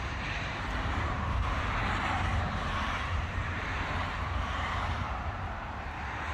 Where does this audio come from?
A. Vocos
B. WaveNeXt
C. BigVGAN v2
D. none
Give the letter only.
C